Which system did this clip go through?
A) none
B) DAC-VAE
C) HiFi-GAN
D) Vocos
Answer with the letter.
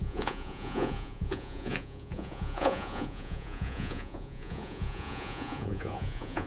D